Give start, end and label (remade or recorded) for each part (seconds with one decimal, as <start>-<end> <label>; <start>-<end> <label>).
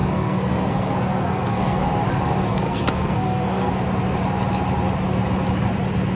0.0-1.9 remade; 1.9-2.5 recorded; 2.5-3.7 remade; 3.7-6.1 recorded